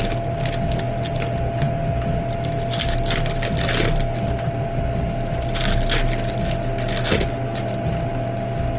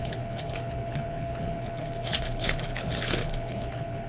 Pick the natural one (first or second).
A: first